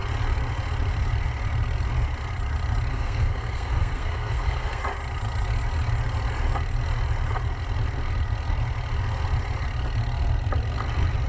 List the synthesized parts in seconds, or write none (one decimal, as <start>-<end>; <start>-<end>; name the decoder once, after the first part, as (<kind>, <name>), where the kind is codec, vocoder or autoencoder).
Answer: 2.9-4.8 (codec, SNAC)